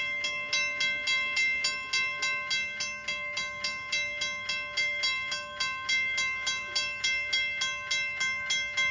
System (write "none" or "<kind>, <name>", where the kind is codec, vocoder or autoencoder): none